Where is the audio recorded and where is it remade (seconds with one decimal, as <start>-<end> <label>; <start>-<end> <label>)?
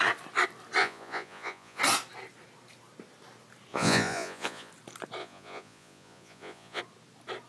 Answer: 0.0-0.8 recorded; 0.8-1.8 remade; 1.8-3.7 recorded; 3.7-4.7 remade; 4.7-5.2 recorded; 5.2-6.8 remade; 6.8-7.5 recorded